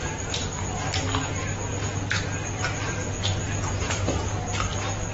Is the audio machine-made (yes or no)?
no